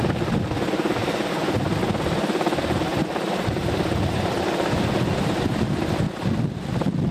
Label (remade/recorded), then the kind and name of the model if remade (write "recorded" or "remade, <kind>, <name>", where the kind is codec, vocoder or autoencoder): recorded